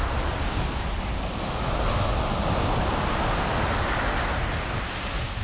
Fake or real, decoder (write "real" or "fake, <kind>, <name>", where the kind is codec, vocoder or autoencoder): real